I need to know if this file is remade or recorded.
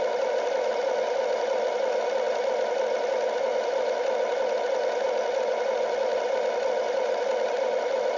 recorded